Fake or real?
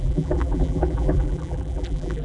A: fake